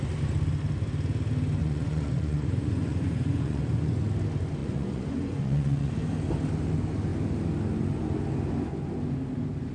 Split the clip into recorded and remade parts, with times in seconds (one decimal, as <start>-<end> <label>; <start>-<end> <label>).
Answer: 0.0-1.6 recorded; 1.6-4.0 remade; 4.0-4.6 recorded; 4.6-5.9 remade; 5.9-9.7 recorded